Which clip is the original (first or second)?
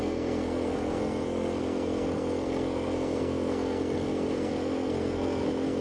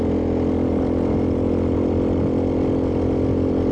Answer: second